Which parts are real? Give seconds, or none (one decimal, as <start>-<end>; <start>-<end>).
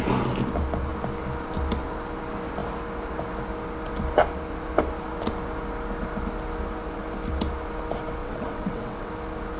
0.0-8.2; 9.1-9.6